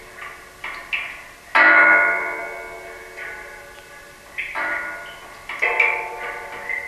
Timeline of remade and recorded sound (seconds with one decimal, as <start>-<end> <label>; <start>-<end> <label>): 0.0-6.9 recorded